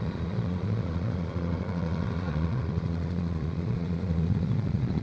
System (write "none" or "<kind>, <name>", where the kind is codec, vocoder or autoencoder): vocoder, Vocos